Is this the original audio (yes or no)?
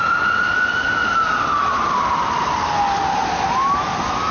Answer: yes